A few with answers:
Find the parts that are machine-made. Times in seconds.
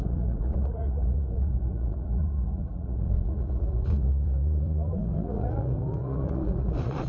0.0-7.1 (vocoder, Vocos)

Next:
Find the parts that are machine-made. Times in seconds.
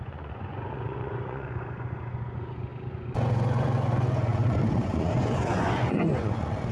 0.0-6.7 (vocoder, Vocos)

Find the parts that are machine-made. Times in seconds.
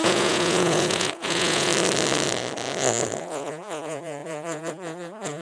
0.0-1.7 (vocoder, Vocos); 3.2-5.4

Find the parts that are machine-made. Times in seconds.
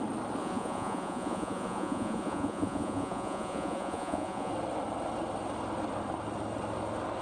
0.4-4.5 (vocoder, Vocos)